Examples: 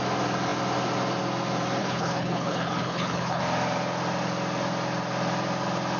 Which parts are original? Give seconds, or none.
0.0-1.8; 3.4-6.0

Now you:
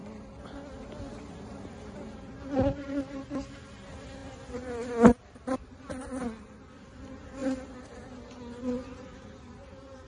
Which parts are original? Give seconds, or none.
0.0-10.1

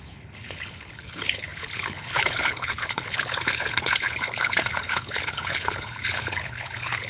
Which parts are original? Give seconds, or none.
none

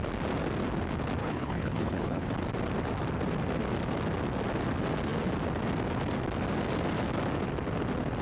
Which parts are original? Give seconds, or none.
0.0-1.2; 2.3-8.2

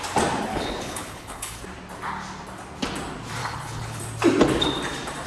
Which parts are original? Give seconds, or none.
0.0-0.5; 1.6-3.4; 4.0-5.3

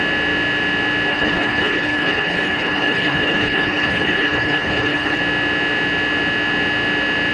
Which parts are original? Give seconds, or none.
0.0-1.1; 5.2-7.3

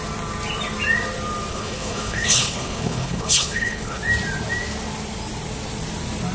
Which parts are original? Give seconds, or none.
0.0-1.5; 4.0-6.3